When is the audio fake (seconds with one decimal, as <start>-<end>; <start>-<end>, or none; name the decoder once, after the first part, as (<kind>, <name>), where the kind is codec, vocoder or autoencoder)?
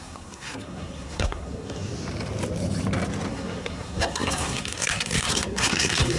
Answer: 0.0-1.9 (codec, SNAC); 3.3-6.2